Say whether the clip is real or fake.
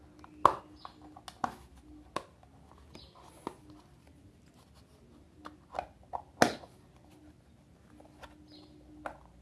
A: real